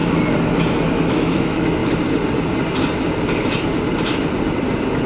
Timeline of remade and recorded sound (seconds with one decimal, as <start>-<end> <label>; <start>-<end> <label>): 0.0-0.9 recorded; 0.9-1.8 remade; 1.8-5.1 recorded